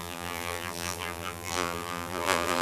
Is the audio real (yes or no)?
no